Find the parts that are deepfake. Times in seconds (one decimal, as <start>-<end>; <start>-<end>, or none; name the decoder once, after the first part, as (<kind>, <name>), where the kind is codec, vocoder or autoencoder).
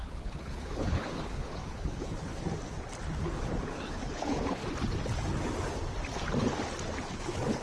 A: 0.0-2.4 (codec, HILCodec); 3.2-4.6; 7.0-7.6